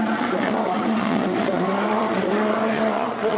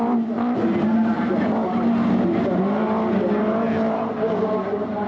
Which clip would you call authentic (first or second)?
second